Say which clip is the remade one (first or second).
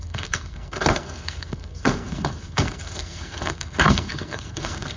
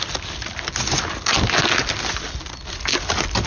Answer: first